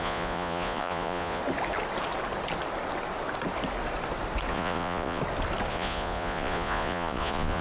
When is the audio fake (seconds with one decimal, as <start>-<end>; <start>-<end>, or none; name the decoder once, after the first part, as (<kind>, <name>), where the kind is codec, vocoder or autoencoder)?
0.0-1.4 (vocoder, Vocos); 4.5-5.2; 5.7-7.6